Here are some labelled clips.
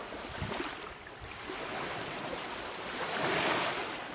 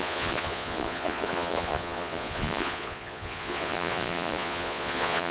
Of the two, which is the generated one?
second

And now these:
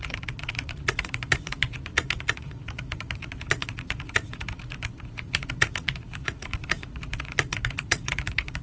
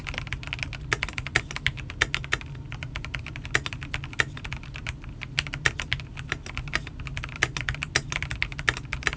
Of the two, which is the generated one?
first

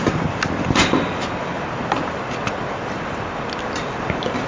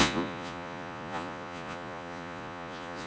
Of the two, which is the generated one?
second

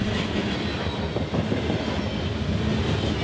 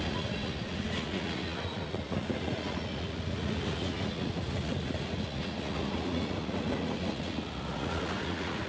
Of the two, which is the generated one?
second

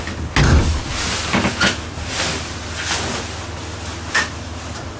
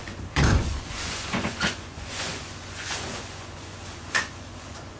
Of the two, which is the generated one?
second